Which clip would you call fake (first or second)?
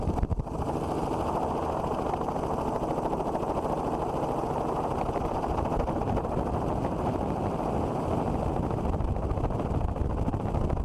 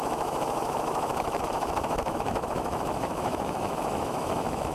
second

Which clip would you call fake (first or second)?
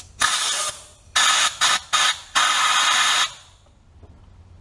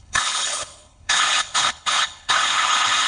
second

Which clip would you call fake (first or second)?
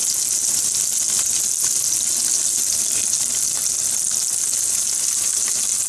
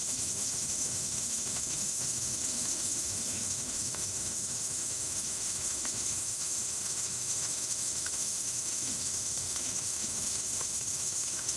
second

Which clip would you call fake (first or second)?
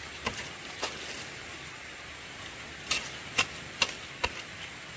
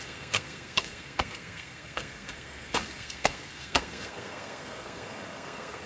second